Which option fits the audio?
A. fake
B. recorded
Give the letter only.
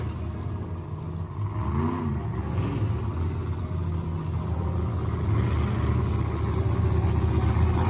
B